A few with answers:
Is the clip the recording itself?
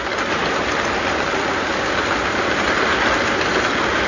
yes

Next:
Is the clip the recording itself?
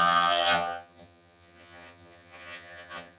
no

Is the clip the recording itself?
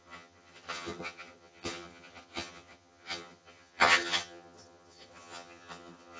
no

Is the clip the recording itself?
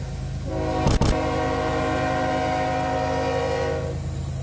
yes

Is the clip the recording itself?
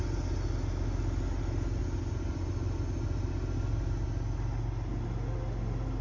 yes